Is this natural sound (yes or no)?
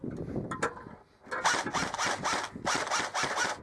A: yes